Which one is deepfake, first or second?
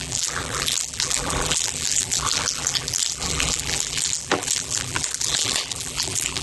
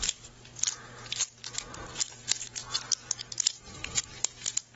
first